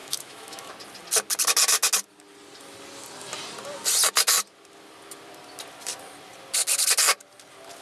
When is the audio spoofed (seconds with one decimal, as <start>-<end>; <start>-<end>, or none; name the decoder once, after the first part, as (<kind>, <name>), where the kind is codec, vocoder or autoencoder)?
0.0-0.7 (autoencoder, DAC-VAE)